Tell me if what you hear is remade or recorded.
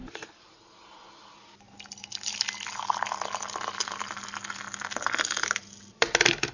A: recorded